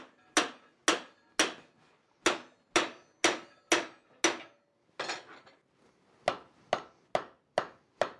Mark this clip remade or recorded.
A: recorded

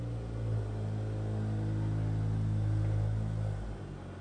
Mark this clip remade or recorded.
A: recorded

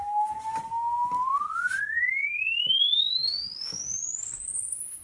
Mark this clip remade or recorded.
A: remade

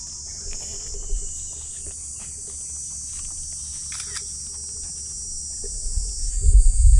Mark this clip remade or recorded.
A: recorded